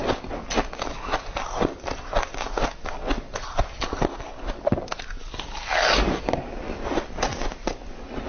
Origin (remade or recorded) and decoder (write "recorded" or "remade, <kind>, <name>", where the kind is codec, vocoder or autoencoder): recorded